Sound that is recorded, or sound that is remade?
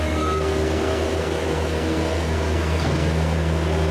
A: remade